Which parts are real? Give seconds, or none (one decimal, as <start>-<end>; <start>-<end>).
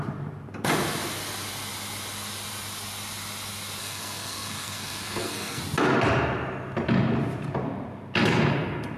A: 0.0-3.8; 5.6-9.0